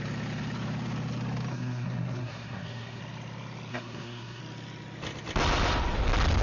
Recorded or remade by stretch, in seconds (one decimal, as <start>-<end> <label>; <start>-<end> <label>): 0.0-1.5 recorded; 1.5-3.0 remade; 3.0-3.7 recorded; 3.7-4.4 remade; 4.4-6.4 recorded